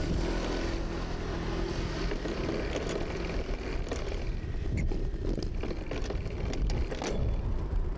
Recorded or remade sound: recorded